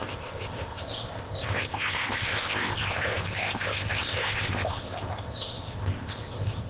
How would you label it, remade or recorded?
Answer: remade